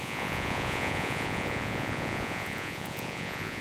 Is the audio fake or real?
fake